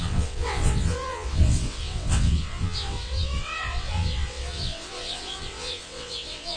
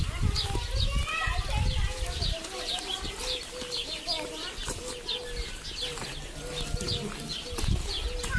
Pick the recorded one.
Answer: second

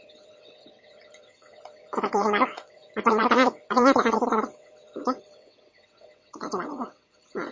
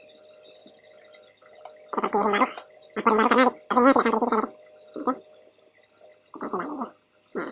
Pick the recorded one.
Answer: second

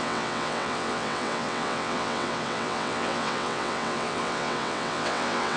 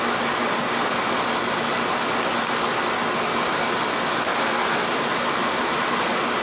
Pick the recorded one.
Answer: second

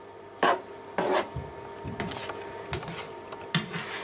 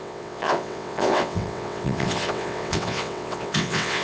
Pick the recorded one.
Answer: first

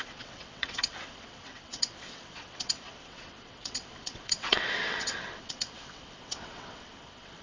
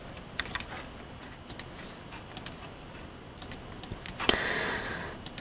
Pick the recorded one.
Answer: second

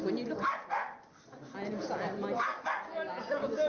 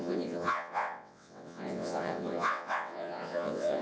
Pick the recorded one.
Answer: first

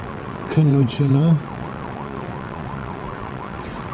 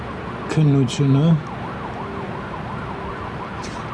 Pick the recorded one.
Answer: second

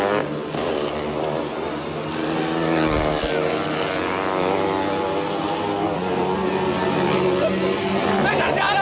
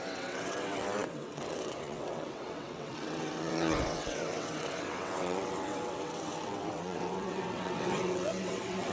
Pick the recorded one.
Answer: first